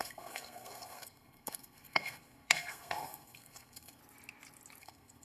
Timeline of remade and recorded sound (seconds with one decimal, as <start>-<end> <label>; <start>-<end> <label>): 0.0-4.0 remade; 4.0-4.8 recorded; 4.8-5.2 remade